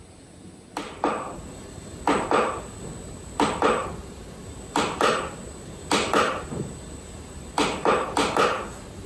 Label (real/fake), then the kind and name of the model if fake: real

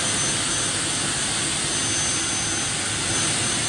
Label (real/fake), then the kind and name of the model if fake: real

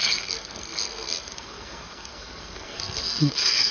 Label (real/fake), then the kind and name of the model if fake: fake, codec, SNAC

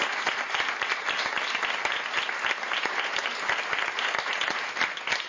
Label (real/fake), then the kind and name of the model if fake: real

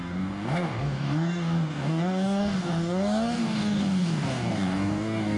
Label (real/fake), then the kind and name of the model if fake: fake, codec, DAC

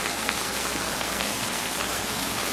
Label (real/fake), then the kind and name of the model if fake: fake, codec, SNAC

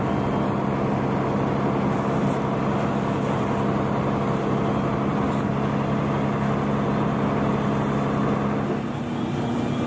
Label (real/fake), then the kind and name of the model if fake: real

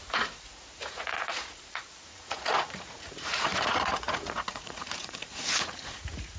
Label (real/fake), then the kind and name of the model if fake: fake, vocoder, Vocos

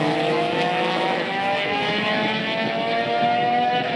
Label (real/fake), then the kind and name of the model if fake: fake, autoencoder, DAC-VAE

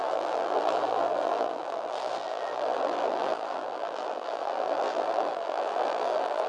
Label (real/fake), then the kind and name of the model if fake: fake, vocoder, BigVGAN v2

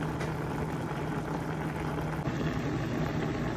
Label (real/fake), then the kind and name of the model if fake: real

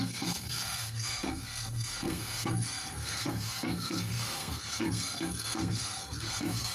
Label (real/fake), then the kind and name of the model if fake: fake, codec, SNAC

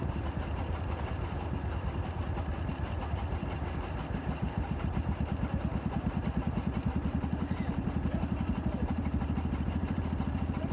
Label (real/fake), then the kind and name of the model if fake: fake, vocoder, BigVGAN v2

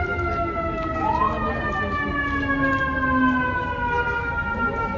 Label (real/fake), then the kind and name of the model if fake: real